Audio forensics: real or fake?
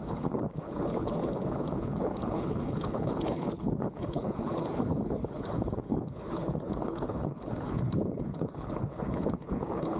fake